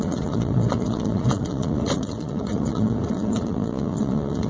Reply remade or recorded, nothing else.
remade